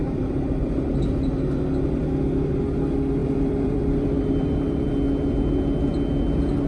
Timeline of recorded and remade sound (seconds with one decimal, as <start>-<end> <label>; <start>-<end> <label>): 0.0-0.9 remade; 0.9-3.2 recorded; 3.2-4.9 remade; 4.9-6.7 recorded